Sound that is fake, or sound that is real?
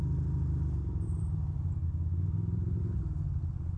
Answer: real